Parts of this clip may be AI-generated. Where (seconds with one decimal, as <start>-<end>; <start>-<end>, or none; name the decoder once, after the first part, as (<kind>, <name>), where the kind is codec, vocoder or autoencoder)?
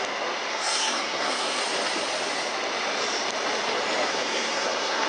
0.5-1.6 (codec, SNAC); 4.1-5.1